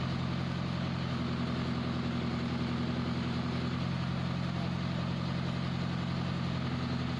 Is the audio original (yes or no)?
yes